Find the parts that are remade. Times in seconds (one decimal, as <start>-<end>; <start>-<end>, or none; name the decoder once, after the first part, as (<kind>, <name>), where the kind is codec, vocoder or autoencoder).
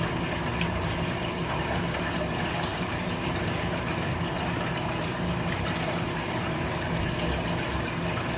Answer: 0.5-1.6 (vocoder, BigVGAN v2); 2.7-7.1